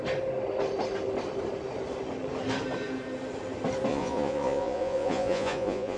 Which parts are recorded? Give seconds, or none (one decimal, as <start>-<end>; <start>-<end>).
0.0-3.9